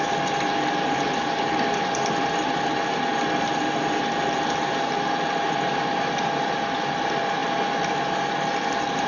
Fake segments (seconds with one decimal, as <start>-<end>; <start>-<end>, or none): none